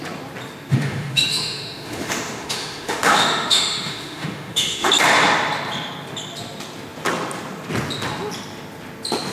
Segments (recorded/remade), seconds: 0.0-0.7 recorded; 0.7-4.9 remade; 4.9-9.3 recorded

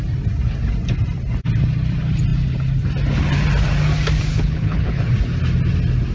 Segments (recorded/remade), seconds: 0.0-4.3 recorded; 4.3-5.0 remade; 5.0-6.1 recorded

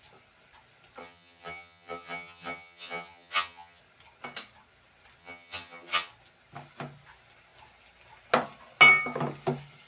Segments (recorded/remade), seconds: 0.0-1.0 recorded; 1.0-3.8 remade; 3.8-5.2 recorded; 5.2-6.1 remade; 6.1-9.9 recorded

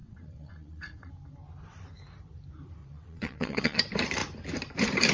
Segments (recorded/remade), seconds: 0.0-1.1 remade; 1.1-2.8 recorded; 2.8-3.8 remade; 3.8-5.1 recorded